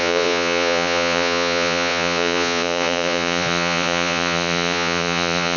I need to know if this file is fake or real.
fake